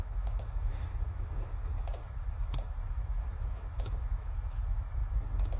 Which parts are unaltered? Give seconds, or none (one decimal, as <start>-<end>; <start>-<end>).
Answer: none